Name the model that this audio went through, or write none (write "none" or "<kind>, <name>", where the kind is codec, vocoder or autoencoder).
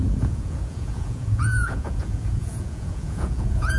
vocoder, Vocos